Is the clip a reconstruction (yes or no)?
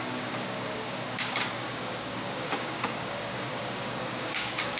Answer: yes